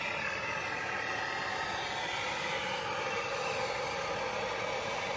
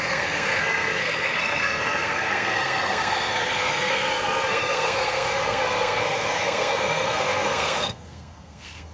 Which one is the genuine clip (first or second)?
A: first